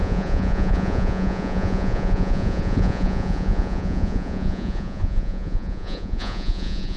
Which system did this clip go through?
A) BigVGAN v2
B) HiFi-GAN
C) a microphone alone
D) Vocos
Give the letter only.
D